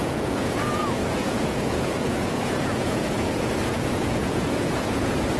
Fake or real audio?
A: fake